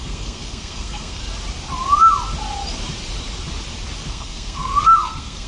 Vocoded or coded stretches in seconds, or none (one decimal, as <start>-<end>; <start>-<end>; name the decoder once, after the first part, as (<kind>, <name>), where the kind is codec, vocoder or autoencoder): 0.0-1.2 (codec, SNAC); 4.1-5.5